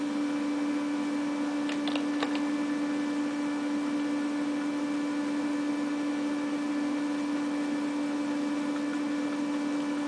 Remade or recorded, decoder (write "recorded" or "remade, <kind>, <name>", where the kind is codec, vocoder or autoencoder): recorded